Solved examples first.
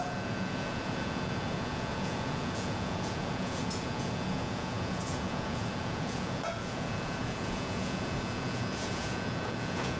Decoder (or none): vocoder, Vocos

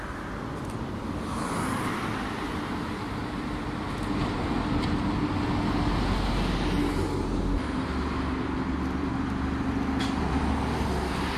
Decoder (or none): none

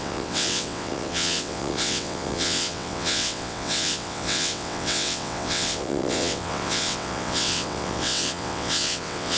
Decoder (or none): vocoder, WaveNeXt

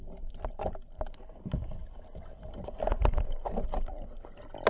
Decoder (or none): none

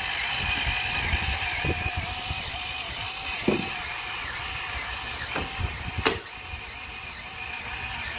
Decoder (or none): none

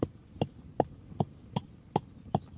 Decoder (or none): none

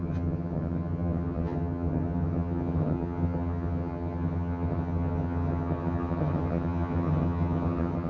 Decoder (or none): vocoder, HiFi-GAN